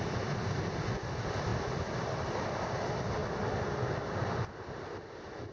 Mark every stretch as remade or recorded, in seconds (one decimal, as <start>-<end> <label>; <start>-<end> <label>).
0.0-5.5 recorded